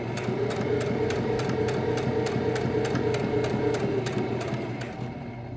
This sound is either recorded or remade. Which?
recorded